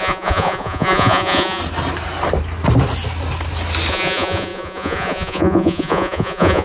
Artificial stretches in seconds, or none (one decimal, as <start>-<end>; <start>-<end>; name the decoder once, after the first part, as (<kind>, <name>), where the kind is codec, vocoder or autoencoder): 0.0-1.6 (vocoder, Vocos); 3.9-6.6